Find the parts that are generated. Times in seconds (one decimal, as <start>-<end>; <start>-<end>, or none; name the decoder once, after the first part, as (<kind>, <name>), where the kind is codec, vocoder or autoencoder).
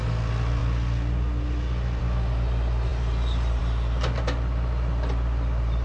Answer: 2.9-3.6 (vocoder, BigVGAN v2)